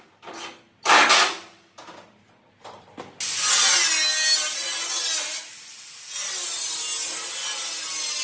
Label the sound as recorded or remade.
recorded